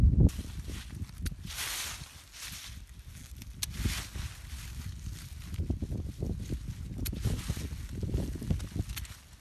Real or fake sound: real